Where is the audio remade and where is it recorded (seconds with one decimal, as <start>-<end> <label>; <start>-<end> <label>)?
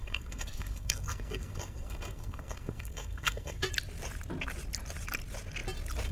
0.0-3.7 remade; 3.7-6.1 recorded